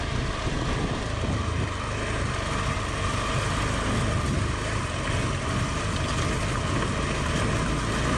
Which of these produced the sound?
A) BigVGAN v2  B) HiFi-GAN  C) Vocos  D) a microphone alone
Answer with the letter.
D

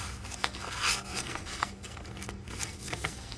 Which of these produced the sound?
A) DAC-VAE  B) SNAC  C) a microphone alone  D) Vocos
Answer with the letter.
B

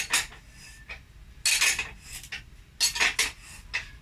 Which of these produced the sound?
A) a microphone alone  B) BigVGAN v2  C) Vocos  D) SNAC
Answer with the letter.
A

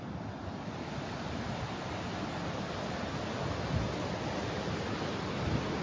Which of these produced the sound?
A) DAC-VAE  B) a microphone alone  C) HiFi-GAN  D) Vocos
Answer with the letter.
B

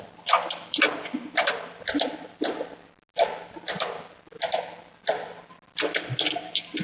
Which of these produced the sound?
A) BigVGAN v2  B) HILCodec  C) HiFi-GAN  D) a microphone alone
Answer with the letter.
D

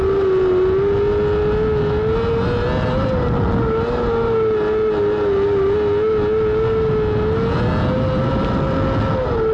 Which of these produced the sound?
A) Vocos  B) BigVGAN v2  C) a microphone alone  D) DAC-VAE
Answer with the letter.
C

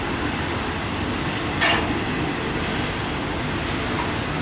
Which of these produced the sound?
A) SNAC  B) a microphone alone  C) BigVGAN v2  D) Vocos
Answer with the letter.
B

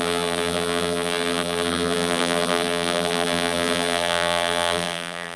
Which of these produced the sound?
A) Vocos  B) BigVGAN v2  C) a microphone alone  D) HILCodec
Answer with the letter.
B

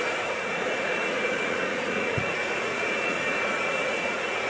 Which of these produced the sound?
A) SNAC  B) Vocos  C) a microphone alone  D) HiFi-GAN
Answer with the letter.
B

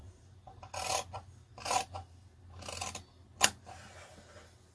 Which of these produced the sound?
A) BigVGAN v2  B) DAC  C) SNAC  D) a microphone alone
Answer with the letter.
D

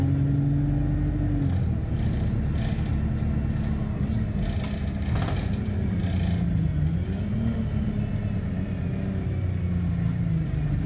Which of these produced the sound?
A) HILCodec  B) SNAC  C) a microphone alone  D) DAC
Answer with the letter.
C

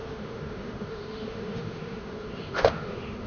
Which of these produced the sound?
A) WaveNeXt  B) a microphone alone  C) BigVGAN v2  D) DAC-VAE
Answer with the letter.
D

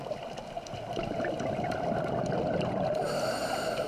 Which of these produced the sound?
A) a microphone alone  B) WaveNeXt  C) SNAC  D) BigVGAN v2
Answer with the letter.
A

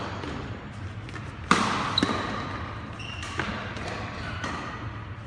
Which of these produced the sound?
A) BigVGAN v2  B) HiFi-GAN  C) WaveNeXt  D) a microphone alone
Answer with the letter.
D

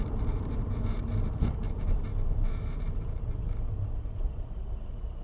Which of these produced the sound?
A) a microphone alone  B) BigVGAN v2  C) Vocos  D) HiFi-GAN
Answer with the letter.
B